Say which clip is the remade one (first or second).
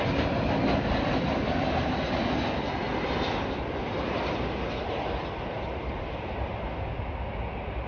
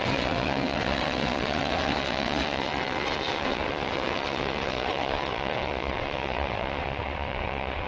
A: second